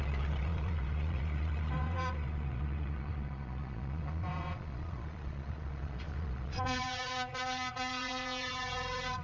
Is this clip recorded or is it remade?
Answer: remade